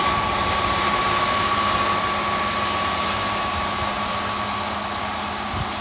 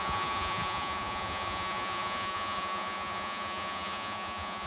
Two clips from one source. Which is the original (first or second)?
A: first